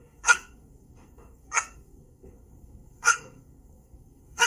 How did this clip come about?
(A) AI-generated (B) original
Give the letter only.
A